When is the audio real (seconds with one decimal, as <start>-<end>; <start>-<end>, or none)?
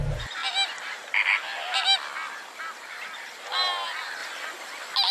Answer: 0.4-2.9; 4.2-5.1